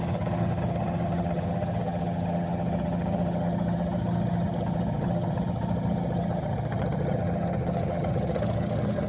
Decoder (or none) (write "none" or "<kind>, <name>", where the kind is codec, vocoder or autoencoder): vocoder, HiFi-GAN